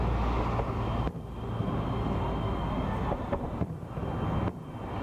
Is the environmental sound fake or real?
real